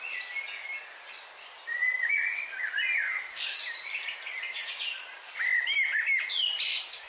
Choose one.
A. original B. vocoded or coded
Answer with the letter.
A